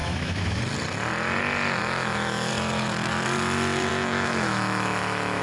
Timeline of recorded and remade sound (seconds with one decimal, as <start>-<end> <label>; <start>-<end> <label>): 0.0-0.6 remade; 0.6-1.8 recorded; 1.8-2.5 remade; 2.5-3.9 recorded; 3.9-5.4 remade